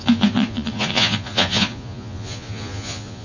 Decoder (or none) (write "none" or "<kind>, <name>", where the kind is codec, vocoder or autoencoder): vocoder, Vocos